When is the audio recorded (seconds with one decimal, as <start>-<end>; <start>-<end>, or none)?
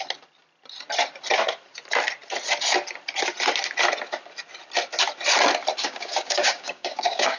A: 0.0-5.8